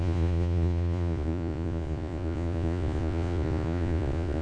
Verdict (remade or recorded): remade